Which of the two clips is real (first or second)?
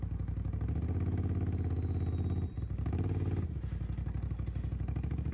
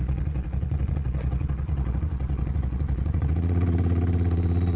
first